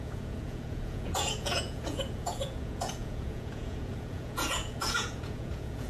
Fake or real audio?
fake